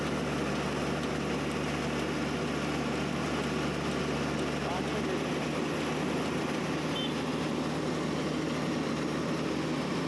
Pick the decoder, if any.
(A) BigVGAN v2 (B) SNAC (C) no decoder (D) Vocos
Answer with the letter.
C